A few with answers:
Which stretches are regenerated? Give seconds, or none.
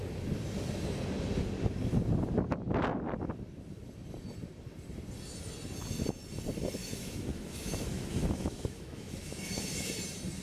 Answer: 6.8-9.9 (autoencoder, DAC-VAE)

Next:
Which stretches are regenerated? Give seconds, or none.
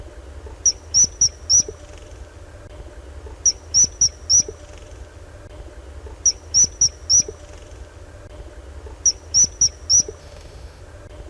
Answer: 10.2-10.8 (autoencoder, DAC-VAE)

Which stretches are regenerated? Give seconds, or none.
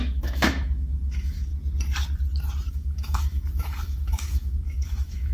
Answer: 0.0-1.5 (autoencoder, DAC-VAE); 2.7-5.3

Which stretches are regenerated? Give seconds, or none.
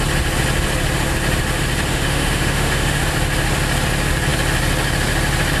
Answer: 1.9-3.0 (autoencoder, DAC-VAE)